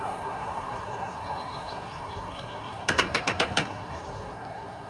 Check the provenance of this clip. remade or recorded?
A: remade